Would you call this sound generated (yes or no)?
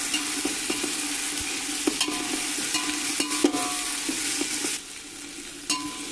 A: no